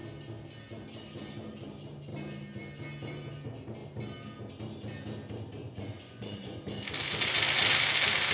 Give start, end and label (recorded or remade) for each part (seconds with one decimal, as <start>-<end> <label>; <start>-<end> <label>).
0.0-5.6 recorded; 5.6-6.6 remade; 6.6-8.3 recorded